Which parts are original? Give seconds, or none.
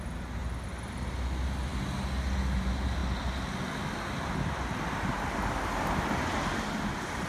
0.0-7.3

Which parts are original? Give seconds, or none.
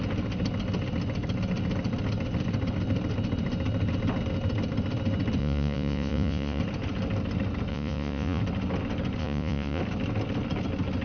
0.0-5.4; 6.6-7.7; 8.4-9.2; 9.8-11.0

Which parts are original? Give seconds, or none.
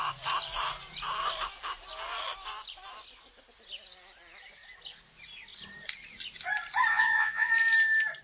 0.0-6.9; 7.5-8.2